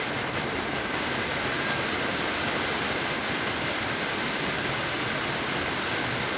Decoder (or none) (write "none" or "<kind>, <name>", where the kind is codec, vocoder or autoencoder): none